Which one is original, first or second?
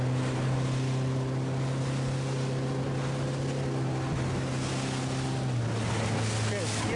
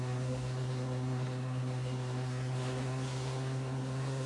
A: first